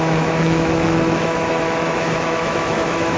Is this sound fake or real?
fake